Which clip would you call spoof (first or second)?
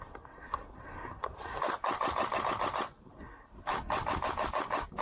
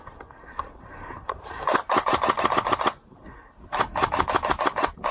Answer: second